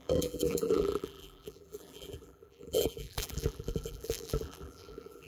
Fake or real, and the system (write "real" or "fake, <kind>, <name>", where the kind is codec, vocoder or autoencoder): fake, vocoder, BigVGAN v2